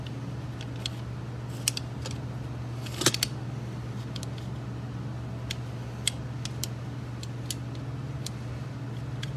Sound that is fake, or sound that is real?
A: real